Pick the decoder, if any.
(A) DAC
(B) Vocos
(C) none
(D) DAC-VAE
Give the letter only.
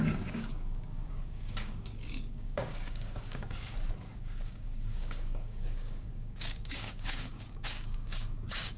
A